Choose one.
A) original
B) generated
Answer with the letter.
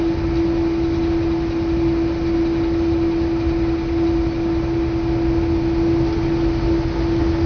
A